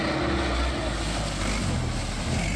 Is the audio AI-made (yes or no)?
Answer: no